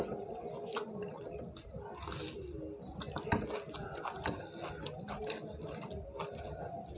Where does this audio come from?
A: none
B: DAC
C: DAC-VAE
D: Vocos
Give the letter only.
A